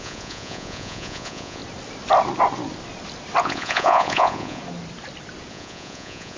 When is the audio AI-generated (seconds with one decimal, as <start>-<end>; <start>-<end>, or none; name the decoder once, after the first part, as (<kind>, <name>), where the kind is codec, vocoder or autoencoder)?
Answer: 0.0-1.6 (vocoder, Vocos); 3.4-4.6; 5.5-6.4